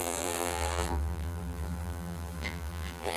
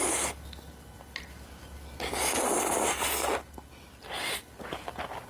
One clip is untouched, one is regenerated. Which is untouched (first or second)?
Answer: second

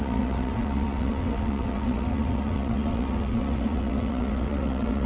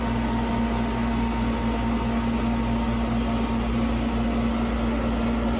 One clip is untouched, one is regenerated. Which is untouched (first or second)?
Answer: second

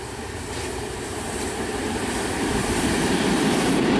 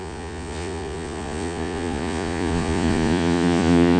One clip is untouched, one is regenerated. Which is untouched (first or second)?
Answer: first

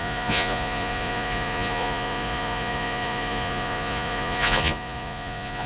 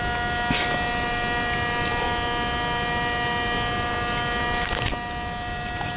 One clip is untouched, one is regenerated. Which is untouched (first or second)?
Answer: second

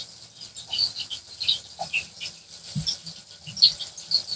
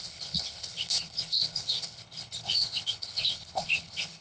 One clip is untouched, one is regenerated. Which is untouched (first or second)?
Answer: first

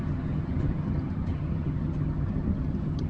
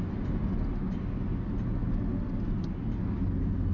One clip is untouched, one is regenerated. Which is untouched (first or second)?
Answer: second